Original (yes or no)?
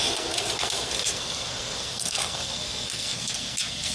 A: no